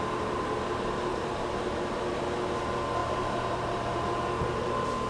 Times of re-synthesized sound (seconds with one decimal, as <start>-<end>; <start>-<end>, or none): 1.1-2.2; 3.0-4.1